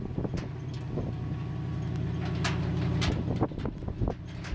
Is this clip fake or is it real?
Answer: real